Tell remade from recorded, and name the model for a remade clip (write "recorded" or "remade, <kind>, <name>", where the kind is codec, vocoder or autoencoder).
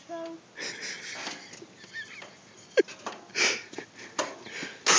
recorded